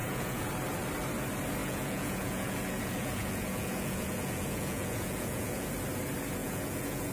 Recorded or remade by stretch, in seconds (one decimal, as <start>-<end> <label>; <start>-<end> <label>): 0.0-0.5 remade; 0.5-1.6 recorded; 1.6-5.7 remade; 5.7-6.4 recorded; 6.4-7.1 remade